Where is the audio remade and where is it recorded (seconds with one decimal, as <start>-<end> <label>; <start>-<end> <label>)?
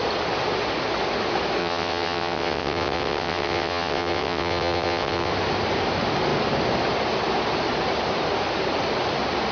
0.0-1.6 recorded; 1.6-5.3 remade; 5.3-9.5 recorded